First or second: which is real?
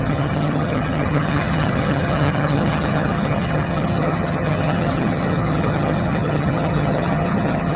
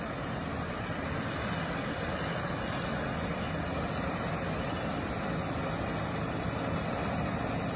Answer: second